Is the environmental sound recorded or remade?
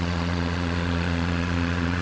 remade